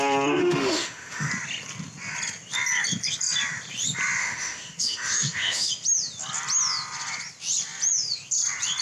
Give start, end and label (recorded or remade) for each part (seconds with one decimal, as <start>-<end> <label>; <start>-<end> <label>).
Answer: 0.0-0.4 recorded; 0.4-1.3 remade; 1.3-4.2 recorded; 4.2-5.7 remade; 5.7-8.8 recorded